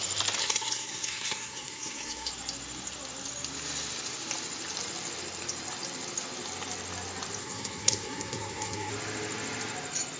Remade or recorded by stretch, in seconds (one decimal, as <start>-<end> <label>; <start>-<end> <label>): 0.0-0.4 recorded; 0.4-2.3 remade; 2.3-7.4 recorded; 7.4-8.9 remade; 8.9-10.2 recorded